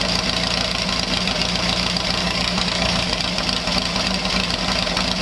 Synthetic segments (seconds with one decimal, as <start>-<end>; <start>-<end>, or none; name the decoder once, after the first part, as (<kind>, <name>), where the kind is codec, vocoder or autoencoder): 2.2-3.2 (codec, DAC)